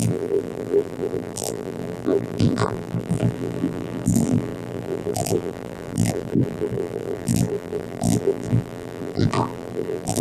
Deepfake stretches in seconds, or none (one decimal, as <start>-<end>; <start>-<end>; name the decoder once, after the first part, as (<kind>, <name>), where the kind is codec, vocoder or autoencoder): 0.0-10.2 (vocoder, BigVGAN v2)